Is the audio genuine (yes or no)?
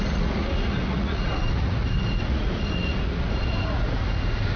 no